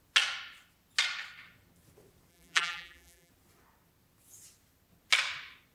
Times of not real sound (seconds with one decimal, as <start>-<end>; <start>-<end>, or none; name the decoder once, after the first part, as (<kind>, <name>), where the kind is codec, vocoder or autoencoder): 2.3-3.3 (vocoder, BigVGAN v2)